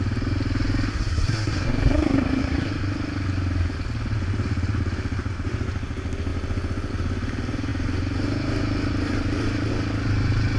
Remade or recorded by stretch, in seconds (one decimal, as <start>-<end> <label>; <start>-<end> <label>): 0.0-0.9 recorded; 0.9-2.7 remade; 2.7-10.6 recorded